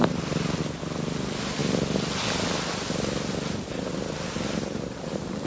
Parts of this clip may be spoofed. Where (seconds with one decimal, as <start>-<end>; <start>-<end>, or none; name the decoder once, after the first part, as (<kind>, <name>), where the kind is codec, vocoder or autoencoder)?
none